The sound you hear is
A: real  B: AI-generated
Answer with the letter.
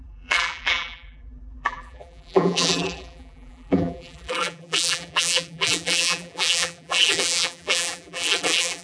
B